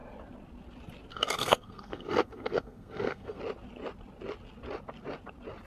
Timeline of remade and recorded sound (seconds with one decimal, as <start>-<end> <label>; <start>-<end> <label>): 0.0-1.1 recorded; 1.1-3.4 remade; 3.4-5.7 recorded